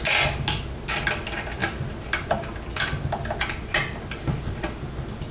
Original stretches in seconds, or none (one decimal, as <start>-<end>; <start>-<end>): 0.0-5.3